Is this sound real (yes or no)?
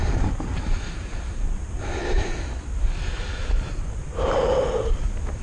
yes